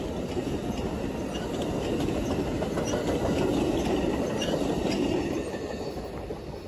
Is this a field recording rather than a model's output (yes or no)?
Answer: yes